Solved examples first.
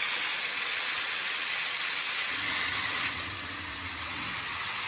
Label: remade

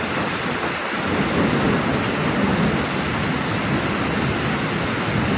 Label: recorded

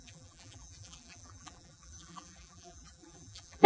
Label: remade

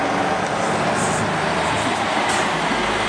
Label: recorded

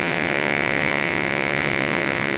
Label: remade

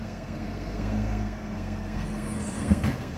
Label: remade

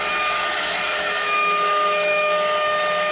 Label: remade